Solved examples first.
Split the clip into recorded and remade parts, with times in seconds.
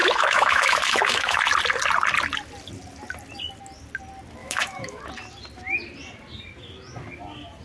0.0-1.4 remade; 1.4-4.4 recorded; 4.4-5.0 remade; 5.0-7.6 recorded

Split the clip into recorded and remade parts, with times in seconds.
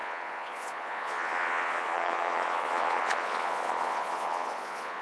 0.0-5.0 remade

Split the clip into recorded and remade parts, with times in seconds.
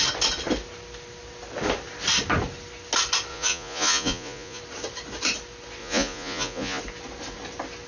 0.0-3.3 recorded; 3.3-4.6 remade; 4.6-5.8 recorded; 5.8-6.8 remade; 6.8-7.9 recorded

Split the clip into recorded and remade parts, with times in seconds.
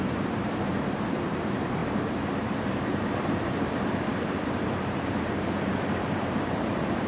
0.0-7.1 remade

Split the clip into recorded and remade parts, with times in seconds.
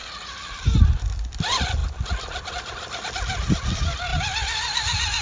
0.0-5.2 recorded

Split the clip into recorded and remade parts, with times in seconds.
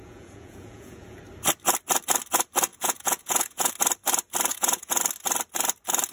0.0-1.2 remade; 1.2-2.7 recorded; 2.7-3.7 remade; 3.7-4.5 recorded; 4.5-5.0 remade; 5.0-6.1 recorded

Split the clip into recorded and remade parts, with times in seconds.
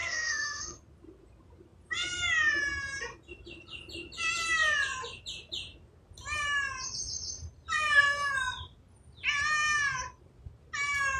0.0-0.8 remade; 0.8-11.2 recorded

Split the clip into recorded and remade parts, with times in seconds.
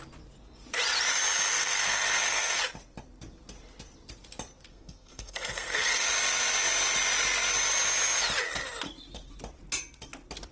0.0-1.5 recorded; 1.5-2.6 remade; 2.6-4.7 recorded; 4.7-6.1 remade; 6.1-10.5 recorded